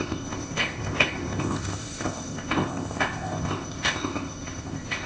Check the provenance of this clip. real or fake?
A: fake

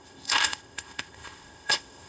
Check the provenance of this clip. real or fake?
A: fake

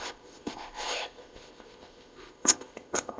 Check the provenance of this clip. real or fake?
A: fake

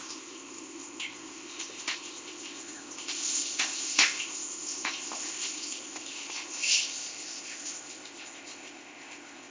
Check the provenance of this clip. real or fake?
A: fake